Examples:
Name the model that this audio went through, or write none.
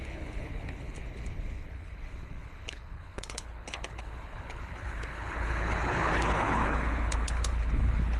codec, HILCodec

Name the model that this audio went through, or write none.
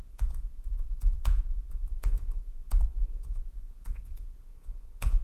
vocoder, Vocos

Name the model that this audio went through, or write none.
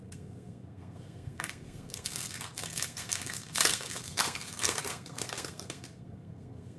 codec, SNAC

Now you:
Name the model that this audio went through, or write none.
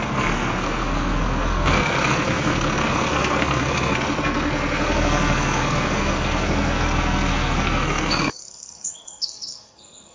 codec, SNAC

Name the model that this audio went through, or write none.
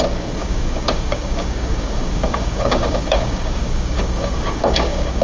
codec, DAC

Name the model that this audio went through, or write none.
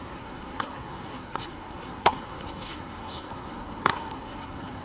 codec, SNAC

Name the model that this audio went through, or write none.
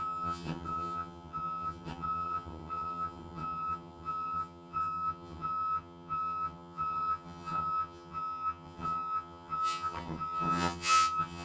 vocoder, HiFi-GAN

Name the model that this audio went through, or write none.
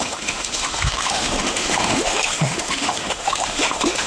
autoencoder, DAC-VAE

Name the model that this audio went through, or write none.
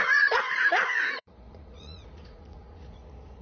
vocoder, Vocos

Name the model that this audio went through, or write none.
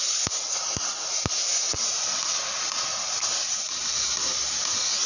none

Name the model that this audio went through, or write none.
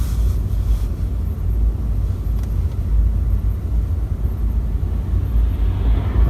none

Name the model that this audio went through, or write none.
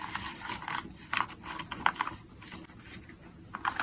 none